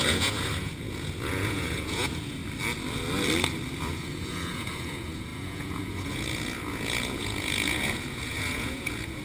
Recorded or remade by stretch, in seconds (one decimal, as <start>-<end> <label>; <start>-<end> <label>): 0.0-2.4 remade; 2.4-3.8 recorded; 3.8-9.2 remade